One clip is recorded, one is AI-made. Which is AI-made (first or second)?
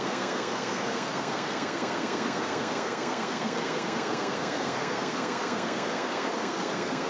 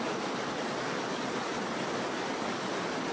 first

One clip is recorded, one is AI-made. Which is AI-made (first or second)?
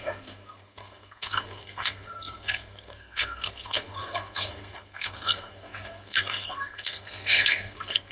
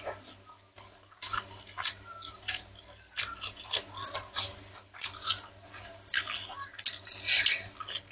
first